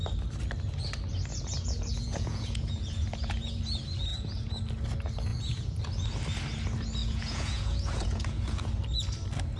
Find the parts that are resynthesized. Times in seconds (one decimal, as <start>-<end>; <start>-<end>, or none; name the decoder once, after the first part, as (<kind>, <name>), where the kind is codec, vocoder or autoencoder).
1.3-3.6 (vocoder, Vocos); 4.1-4.6; 5.3-5.8; 7.0-8.7